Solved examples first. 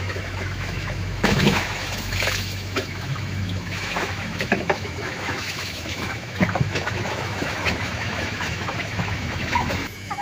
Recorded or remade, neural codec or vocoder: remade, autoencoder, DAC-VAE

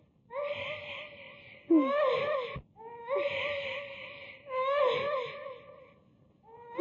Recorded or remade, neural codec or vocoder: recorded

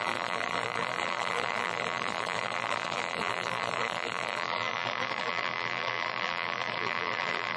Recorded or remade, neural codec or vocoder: remade, vocoder, BigVGAN v2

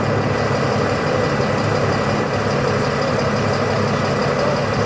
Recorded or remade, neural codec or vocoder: recorded